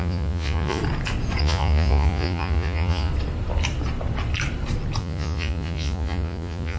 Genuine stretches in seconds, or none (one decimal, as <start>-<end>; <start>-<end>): 0.8-1.4; 3.1-5.0